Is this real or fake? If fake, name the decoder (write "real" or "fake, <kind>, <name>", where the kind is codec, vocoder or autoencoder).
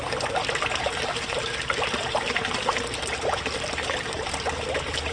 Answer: real